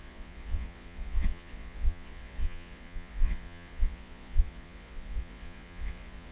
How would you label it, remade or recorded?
remade